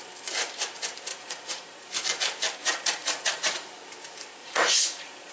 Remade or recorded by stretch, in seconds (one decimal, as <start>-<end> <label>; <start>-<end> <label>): 0.0-1.1 recorded; 1.1-1.9 remade; 1.9-2.6 recorded; 2.6-3.7 remade; 3.7-4.4 recorded; 4.4-5.3 remade